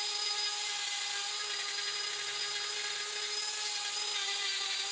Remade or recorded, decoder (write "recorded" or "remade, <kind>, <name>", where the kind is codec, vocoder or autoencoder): recorded